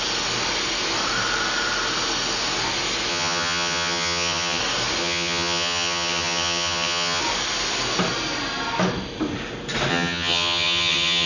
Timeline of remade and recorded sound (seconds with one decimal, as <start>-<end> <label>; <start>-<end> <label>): 0.0-3.1 recorded; 3.1-4.6 remade; 4.6-5.0 recorded; 5.0-7.2 remade; 7.2-9.9 recorded; 9.9-11.3 remade